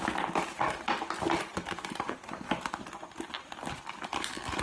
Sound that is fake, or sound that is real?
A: real